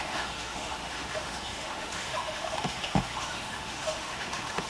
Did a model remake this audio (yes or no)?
yes